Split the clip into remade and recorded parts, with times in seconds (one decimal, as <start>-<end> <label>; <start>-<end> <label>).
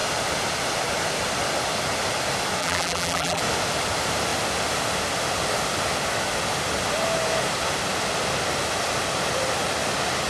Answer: 0.0-2.6 recorded; 2.6-3.4 remade; 3.4-10.3 recorded